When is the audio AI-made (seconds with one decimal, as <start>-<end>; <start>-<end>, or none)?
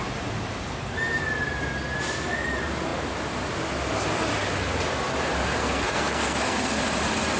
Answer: 5.6-6.8